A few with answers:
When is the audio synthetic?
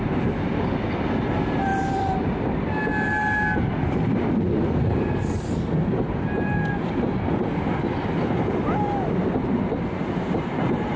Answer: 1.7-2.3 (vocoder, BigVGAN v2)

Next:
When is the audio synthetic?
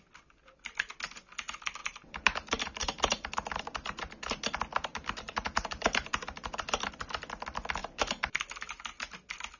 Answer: 1.8-6.9 (vocoder, BigVGAN v2); 7.8-8.4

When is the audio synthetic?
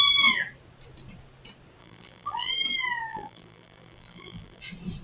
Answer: 1.8-2.5 (vocoder, BigVGAN v2); 3.1-4.6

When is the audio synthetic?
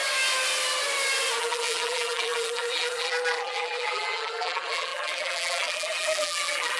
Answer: 1.4-6.8 (vocoder, BigVGAN v2)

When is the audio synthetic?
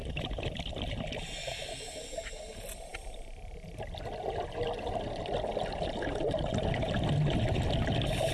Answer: none